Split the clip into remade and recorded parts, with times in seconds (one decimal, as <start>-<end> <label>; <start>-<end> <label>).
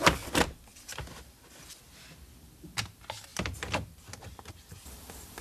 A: 0.0-0.7 recorded; 0.7-2.6 remade; 2.6-3.3 recorded; 3.3-5.4 remade